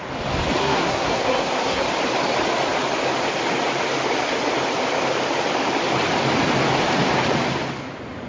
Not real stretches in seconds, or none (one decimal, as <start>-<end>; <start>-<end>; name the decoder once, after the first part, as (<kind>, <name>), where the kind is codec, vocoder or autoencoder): 0.6-1.8 (codec, SNAC)